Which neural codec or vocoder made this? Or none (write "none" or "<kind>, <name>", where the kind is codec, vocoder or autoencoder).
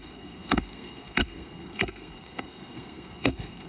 codec, SNAC